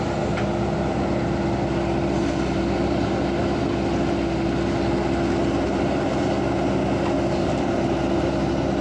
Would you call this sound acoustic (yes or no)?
yes